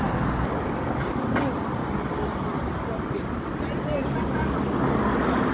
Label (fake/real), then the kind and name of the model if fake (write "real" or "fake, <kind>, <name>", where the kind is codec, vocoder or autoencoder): real